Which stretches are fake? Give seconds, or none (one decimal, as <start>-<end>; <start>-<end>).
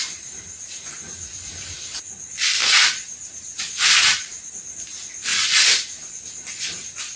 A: 0.0-0.9; 2.6-4.5